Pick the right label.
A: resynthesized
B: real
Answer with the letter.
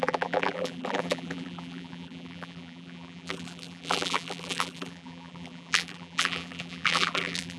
A